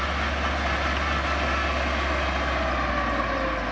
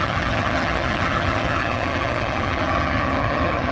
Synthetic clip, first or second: second